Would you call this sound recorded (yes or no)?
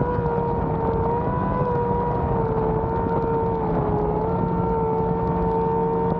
yes